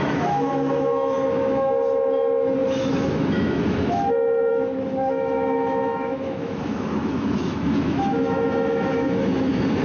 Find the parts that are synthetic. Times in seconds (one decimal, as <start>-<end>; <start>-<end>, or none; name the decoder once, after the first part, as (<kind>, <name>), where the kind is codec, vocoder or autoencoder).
0.0-9.8 (autoencoder, DAC-VAE)